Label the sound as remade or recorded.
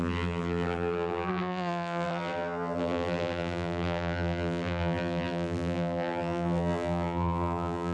remade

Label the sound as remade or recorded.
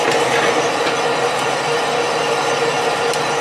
recorded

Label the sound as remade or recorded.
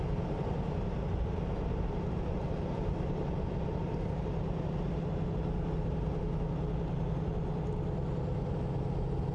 recorded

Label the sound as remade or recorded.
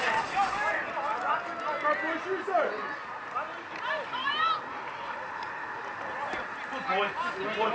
recorded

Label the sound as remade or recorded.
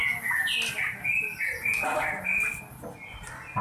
recorded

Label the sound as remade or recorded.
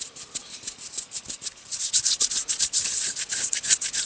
recorded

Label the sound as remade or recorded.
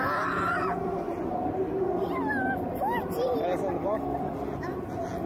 recorded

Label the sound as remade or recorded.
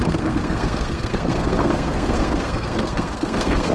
remade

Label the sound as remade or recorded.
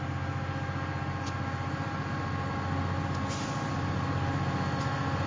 recorded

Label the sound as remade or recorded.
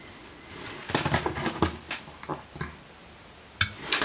recorded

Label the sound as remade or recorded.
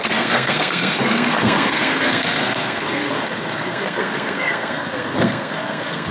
remade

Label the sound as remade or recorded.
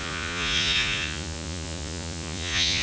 remade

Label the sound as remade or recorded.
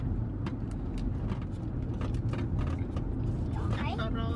recorded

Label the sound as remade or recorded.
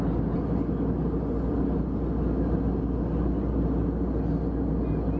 recorded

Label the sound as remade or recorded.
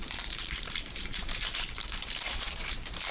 remade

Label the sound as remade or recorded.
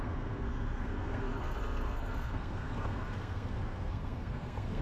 remade